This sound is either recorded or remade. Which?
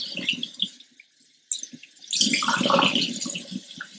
recorded